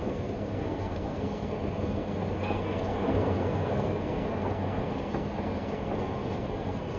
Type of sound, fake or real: fake